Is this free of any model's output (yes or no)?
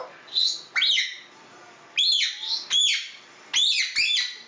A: yes